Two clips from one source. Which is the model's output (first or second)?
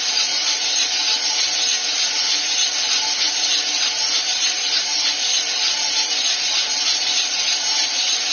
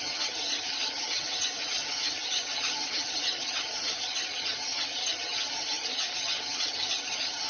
second